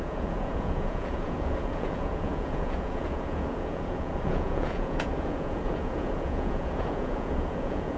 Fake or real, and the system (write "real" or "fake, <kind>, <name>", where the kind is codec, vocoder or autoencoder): fake, vocoder, Vocos